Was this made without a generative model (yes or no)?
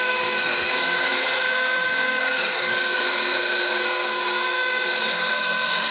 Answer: no